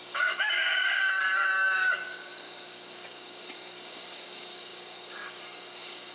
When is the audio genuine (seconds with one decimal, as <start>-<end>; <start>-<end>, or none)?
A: none